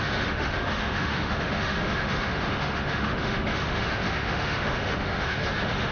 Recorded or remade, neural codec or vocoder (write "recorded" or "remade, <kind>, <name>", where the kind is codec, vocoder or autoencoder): remade, autoencoder, DAC-VAE